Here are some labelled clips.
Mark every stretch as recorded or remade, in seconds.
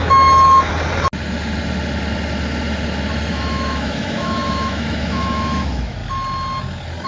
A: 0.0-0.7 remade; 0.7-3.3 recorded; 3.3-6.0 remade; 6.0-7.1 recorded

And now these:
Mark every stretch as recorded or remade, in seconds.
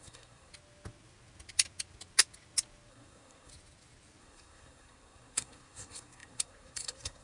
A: 0.0-0.5 remade; 0.5-2.9 recorded; 2.9-3.5 remade; 3.5-4.2 recorded; 4.2-7.2 remade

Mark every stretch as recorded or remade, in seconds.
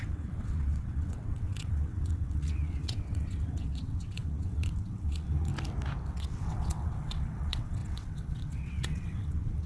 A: 0.0-5.5 remade; 5.5-6.1 recorded; 6.1-9.7 remade